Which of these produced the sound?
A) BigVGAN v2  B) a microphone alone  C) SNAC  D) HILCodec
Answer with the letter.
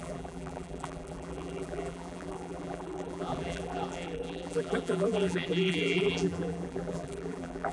A